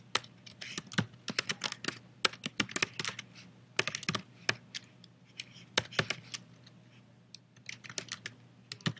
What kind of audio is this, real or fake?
real